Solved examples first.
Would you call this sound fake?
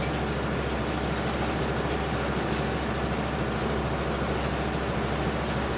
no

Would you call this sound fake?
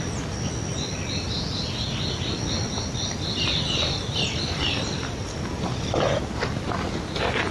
no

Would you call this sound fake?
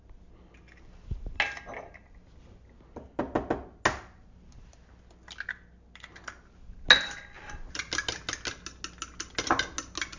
no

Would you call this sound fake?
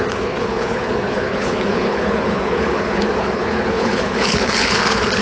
yes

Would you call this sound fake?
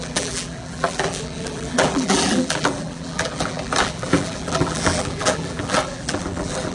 yes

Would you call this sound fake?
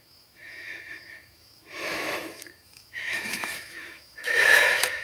yes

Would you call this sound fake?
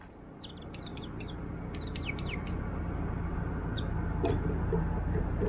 no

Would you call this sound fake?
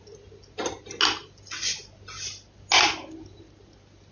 no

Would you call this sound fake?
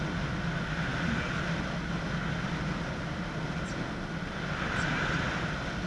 no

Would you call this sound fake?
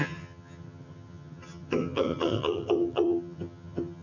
yes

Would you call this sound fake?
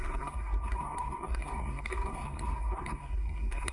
yes